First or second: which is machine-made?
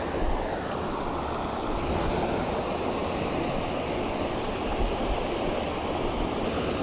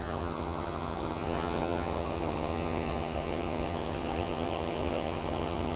second